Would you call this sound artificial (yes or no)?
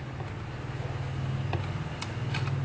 no